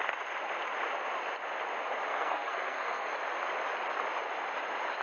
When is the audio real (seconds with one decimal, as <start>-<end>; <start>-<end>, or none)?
0.0-2.1; 3.1-5.0